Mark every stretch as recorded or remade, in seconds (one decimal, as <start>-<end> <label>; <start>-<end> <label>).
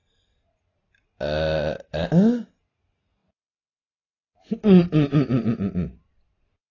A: 0.0-6.7 recorded